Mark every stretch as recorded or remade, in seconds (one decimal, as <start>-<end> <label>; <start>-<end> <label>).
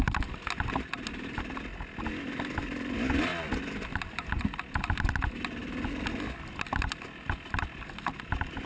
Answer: 0.0-8.7 recorded